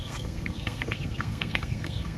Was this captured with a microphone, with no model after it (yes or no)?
no